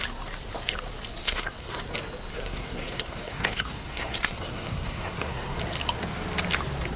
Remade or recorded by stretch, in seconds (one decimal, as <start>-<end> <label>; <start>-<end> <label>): 0.0-1.2 recorded; 1.2-1.8 remade; 1.8-2.3 recorded; 2.3-5.6 remade; 5.6-7.0 recorded